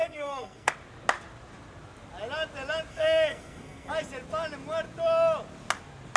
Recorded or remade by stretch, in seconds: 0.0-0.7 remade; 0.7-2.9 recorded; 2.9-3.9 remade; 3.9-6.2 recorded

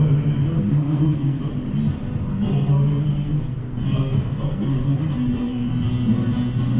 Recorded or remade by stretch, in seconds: 0.0-0.5 recorded; 0.5-1.4 remade; 1.4-2.3 recorded; 2.3-5.7 remade; 5.7-6.8 recorded